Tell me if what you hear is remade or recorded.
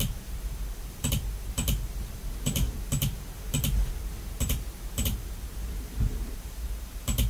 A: remade